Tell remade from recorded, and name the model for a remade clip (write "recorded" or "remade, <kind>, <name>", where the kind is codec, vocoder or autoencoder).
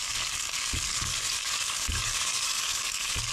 remade, codec, DAC